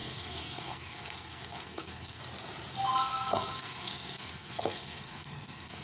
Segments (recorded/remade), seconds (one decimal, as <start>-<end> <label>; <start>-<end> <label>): 0.0-2.2 remade; 2.2-3.0 recorded; 3.0-5.8 remade